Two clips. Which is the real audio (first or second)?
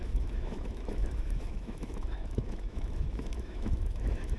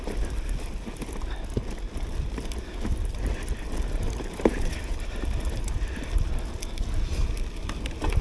second